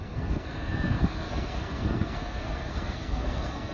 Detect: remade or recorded remade